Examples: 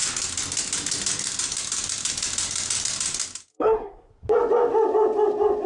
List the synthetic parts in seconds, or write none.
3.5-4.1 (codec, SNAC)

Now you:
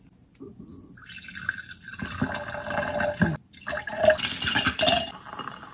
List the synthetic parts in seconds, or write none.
none

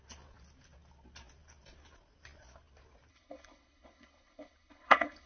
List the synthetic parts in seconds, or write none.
3.1-5.3 (codec, HILCodec)

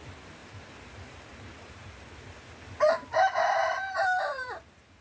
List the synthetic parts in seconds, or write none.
0.4-2.0 (vocoder, BigVGAN v2); 3.6-4.6

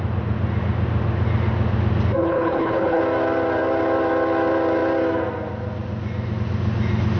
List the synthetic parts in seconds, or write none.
2.2-3.0 (codec, HILCodec)

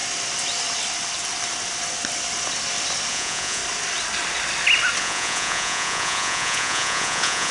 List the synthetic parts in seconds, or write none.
3.1-3.6 (vocoder, Vocos); 5.0-7.5